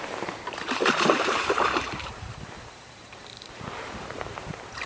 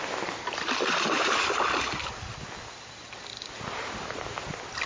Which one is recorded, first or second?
second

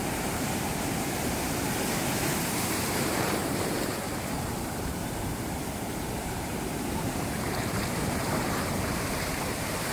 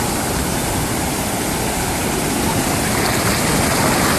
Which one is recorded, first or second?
second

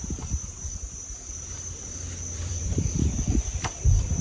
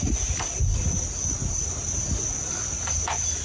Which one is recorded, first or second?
second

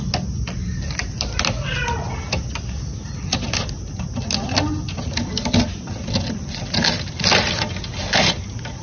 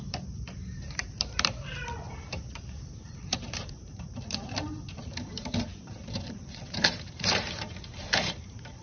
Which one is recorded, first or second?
first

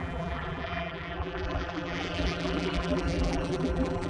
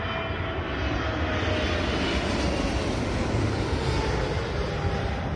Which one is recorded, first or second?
second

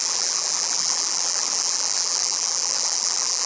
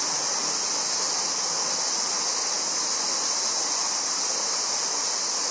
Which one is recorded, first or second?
second